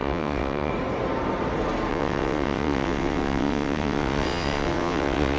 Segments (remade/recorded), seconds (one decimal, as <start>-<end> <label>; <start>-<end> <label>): 0.0-0.7 remade; 0.7-1.9 recorded; 1.9-5.4 remade